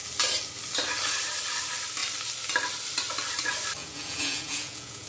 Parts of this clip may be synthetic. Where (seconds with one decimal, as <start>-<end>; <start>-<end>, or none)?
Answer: 3.8-5.1